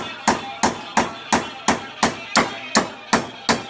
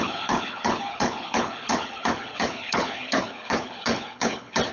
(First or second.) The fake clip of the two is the second